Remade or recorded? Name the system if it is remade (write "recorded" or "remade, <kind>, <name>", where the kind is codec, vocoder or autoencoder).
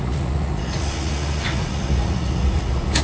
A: remade, vocoder, Vocos